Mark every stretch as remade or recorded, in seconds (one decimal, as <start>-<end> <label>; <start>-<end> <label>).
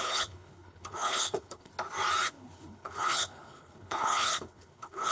0.0-1.7 remade; 1.7-2.3 recorded; 2.3-5.1 remade